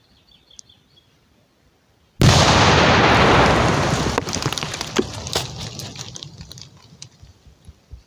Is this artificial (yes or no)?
no